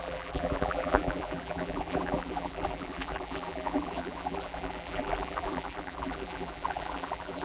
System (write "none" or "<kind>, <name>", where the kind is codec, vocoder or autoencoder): vocoder, BigVGAN v2